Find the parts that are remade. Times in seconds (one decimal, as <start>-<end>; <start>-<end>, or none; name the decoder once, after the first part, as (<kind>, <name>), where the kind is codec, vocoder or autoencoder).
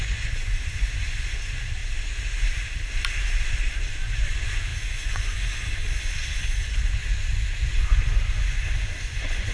0.0-1.8 (vocoder, Vocos); 3.9-9.5